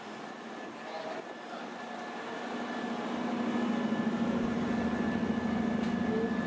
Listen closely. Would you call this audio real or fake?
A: real